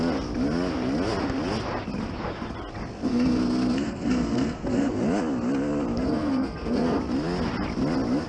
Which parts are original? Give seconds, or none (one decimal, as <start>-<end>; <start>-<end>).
0.0-3.1; 4.9-6.0; 7.0-8.3